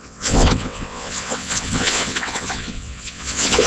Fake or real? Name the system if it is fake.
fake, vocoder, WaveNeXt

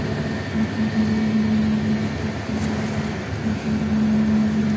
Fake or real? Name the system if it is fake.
real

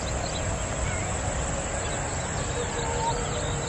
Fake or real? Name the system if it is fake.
real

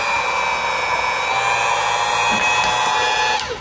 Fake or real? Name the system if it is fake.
real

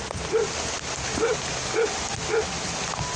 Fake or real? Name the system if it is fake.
real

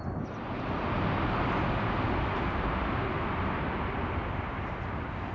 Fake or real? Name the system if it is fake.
real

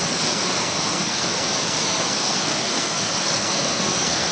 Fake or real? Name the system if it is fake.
fake, codec, SNAC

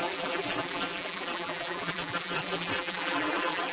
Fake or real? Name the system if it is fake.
fake, vocoder, BigVGAN v2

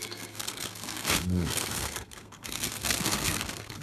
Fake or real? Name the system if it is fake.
fake, codec, SNAC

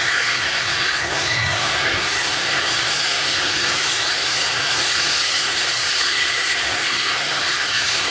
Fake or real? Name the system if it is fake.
fake, codec, SNAC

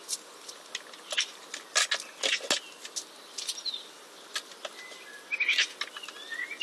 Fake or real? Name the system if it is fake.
real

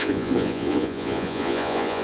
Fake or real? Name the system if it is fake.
fake, vocoder, Vocos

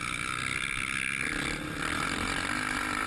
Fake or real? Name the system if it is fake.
real